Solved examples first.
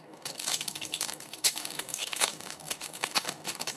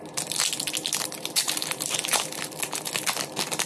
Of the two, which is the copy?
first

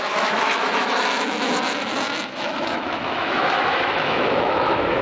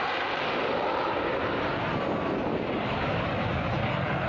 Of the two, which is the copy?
first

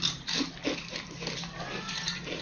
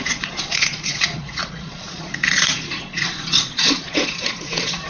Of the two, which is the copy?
second